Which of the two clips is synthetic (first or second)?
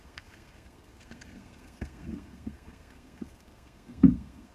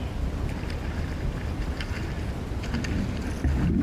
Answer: first